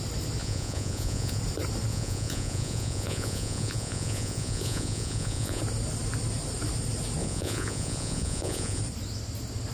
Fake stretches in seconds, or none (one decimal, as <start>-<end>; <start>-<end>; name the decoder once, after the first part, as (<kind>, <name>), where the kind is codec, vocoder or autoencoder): 0.4-1.4 (vocoder, Vocos); 1.9-5.6; 7.2-8.8